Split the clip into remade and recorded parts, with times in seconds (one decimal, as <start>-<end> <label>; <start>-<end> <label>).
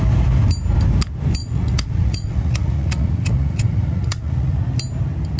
0.0-1.4 recorded; 1.4-4.6 remade; 4.6-5.4 recorded